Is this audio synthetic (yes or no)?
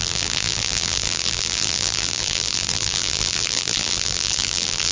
yes